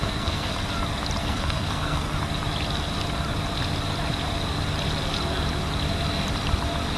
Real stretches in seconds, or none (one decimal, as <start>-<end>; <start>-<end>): 0.5-1.2; 2.1-7.0